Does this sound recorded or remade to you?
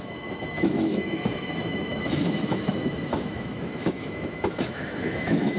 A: remade